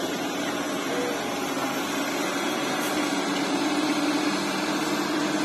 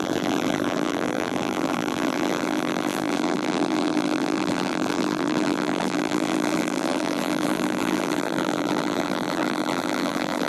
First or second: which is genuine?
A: first